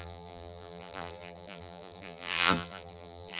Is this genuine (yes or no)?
no